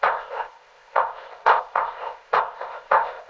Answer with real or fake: fake